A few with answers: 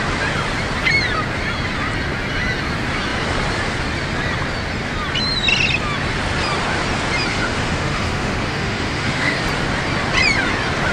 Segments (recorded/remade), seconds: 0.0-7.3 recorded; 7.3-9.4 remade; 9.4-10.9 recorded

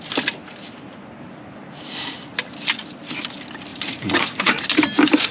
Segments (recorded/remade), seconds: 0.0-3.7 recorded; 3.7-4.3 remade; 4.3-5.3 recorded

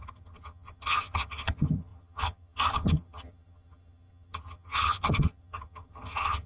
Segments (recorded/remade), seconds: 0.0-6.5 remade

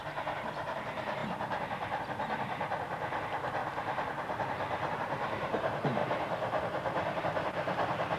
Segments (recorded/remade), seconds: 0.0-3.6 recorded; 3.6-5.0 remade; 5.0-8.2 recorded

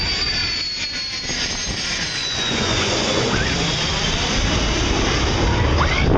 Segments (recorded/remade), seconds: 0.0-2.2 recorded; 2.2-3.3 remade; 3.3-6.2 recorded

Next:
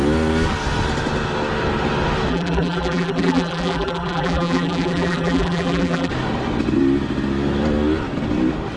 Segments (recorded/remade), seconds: 0.0-2.3 recorded; 2.3-6.1 remade; 6.1-8.8 recorded

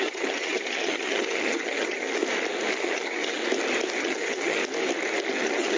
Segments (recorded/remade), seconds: 0.0-2.2 remade; 2.2-2.8 recorded; 2.8-3.4 remade; 3.4-4.0 recorded; 4.0-4.6 remade; 4.6-5.3 recorded; 5.3-5.8 remade